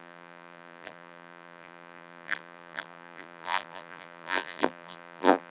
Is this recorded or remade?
remade